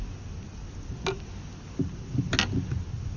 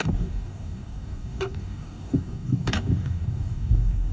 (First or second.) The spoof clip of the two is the second